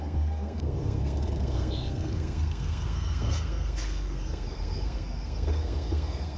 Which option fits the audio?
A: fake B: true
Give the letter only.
A